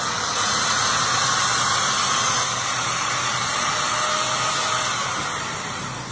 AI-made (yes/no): no